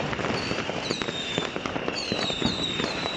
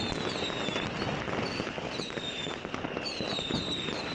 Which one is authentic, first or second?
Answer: second